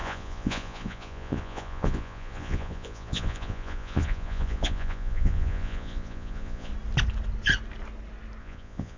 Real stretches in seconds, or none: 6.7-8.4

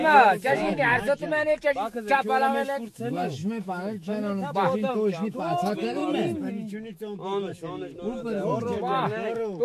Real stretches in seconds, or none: 6.0-6.5

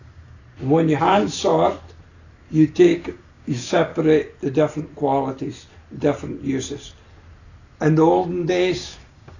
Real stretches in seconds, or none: 0.4-1.0; 1.5-2.5; 3.9-8.5